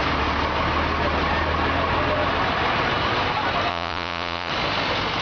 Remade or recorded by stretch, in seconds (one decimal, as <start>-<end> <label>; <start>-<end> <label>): 0.0-3.7 recorded; 3.7-4.5 remade; 4.5-5.2 recorded